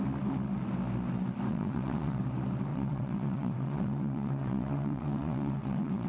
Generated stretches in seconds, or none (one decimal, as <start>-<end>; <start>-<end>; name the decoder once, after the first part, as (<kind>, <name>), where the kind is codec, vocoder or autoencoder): 1.5-2.2 (vocoder, WaveNeXt); 2.7-6.1